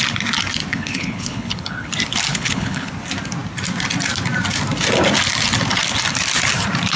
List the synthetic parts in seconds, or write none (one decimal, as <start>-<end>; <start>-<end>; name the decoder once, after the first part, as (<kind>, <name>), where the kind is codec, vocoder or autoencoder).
0.7-1.9 (codec, HILCodec); 2.3-2.9